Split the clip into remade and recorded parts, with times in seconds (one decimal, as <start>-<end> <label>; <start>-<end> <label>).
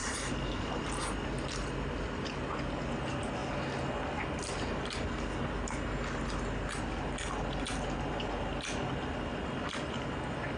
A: 0.0-1.0 remade; 1.0-10.6 recorded